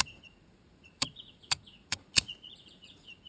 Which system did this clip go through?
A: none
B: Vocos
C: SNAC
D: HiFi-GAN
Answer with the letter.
B